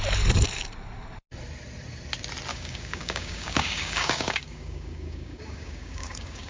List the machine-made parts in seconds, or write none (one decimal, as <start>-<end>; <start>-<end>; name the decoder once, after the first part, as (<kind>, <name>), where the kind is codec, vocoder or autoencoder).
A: 2.5-6.5 (codec, DAC)